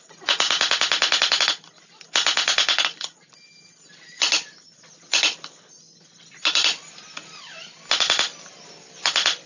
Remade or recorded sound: recorded